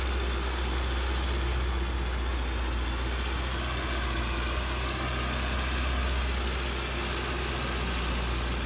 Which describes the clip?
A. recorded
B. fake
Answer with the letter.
A